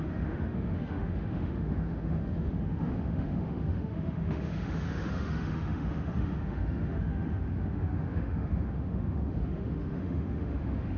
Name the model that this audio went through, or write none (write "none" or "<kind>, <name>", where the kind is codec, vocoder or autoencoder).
autoencoder, DAC-VAE